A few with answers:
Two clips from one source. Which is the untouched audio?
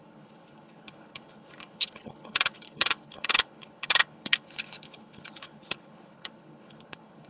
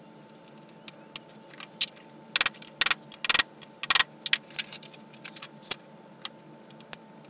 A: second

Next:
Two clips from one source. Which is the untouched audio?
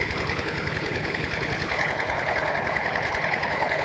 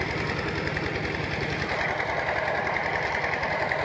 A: second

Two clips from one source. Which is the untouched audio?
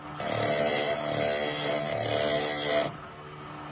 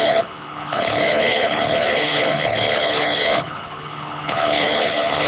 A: first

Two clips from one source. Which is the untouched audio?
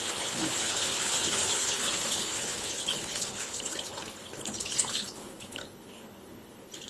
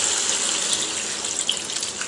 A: second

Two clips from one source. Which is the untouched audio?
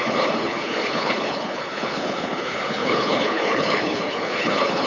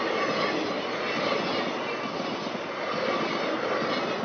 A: second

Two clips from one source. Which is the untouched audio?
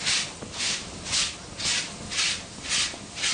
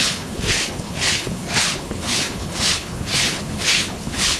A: first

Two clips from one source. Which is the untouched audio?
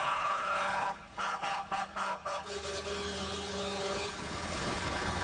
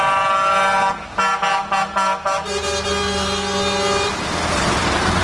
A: second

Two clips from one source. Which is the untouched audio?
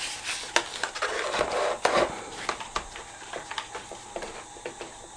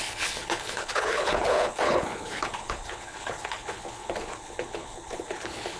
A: first